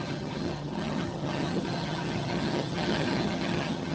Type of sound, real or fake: fake